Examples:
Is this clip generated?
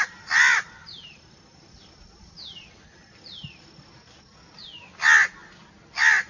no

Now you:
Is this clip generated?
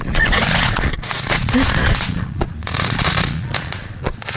yes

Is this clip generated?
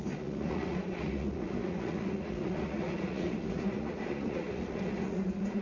yes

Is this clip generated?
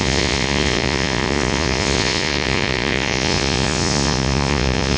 yes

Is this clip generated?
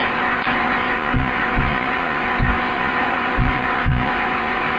yes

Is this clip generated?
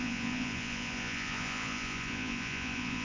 yes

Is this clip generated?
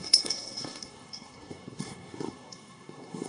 yes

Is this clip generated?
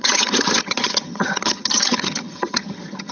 yes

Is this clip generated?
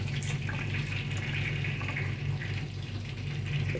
no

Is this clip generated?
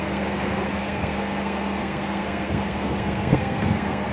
yes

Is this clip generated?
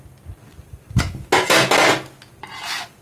no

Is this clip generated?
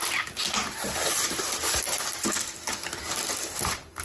no